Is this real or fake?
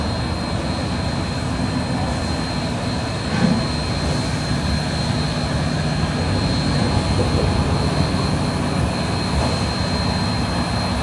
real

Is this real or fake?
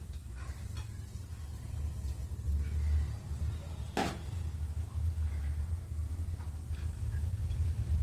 real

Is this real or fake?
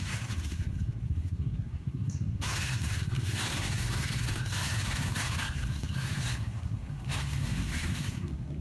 fake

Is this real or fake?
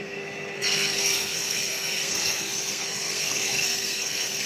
fake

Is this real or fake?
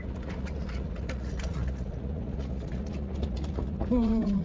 fake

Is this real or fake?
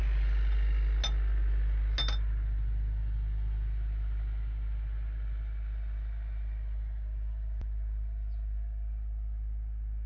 real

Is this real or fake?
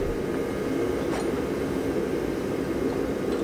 real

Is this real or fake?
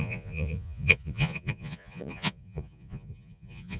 fake